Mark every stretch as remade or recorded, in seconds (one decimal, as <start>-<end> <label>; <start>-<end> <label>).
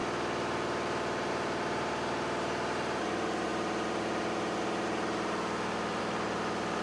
0.0-1.3 recorded; 1.3-6.8 remade